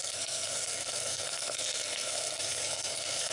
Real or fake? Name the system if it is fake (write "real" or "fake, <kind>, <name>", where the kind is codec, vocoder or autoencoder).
fake, codec, SNAC